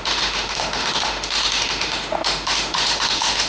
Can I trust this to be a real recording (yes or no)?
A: no